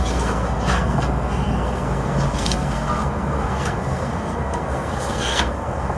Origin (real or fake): fake